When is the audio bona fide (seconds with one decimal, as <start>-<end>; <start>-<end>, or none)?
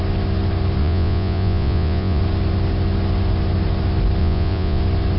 0.0-0.8; 2.2-4.2; 4.8-5.2